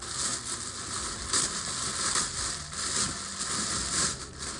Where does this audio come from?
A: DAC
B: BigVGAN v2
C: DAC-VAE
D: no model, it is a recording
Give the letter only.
D